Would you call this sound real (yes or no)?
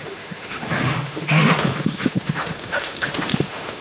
no